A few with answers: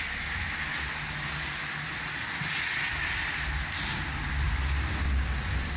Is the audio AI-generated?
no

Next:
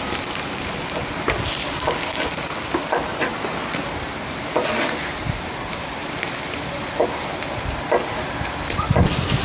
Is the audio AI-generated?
no